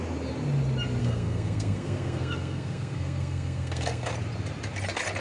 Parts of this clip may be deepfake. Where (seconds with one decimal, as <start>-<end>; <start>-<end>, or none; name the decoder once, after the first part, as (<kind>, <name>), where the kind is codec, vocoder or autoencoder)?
1.0-4.1 (codec, SNAC)